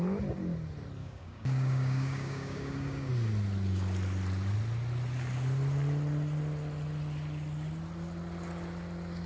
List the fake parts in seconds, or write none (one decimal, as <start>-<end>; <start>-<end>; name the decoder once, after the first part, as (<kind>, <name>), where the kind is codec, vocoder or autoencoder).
1.0-3.1 (codec, DAC)